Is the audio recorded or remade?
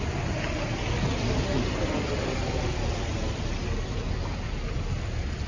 recorded